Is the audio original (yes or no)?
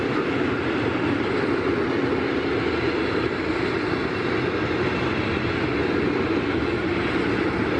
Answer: yes